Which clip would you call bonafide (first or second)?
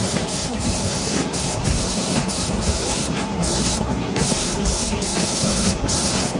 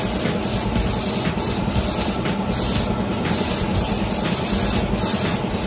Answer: second